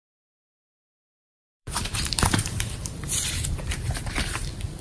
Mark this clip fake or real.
fake